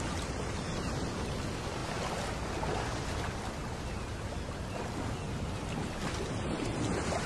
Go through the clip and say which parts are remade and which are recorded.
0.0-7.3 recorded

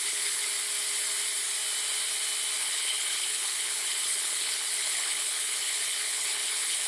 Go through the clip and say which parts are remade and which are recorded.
0.0-0.5 remade; 0.5-2.6 recorded; 2.6-6.9 remade